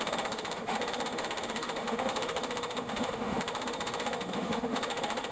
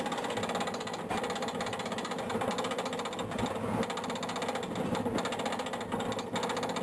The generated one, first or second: first